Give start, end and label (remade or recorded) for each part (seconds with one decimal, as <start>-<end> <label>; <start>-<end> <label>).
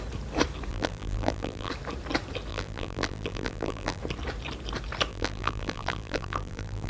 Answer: 0.0-0.7 recorded; 0.7-1.7 remade; 1.7-2.5 recorded; 2.5-4.0 remade; 4.0-5.1 recorded; 5.1-6.9 remade